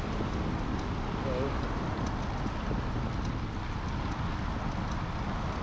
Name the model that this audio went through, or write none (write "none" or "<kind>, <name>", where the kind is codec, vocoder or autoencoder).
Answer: none